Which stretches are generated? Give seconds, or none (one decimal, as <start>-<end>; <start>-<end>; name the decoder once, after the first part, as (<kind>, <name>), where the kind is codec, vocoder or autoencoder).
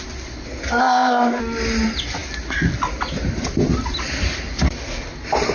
0.8-1.4 (codec, ZipCodec)